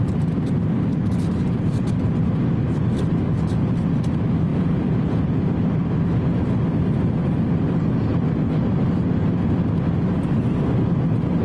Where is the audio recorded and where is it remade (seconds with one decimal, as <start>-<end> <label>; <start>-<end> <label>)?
0.0-4.5 recorded; 4.5-5.4 remade; 5.4-11.4 recorded